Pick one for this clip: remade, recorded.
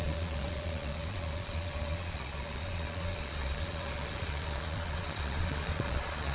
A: remade